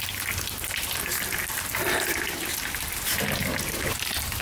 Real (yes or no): yes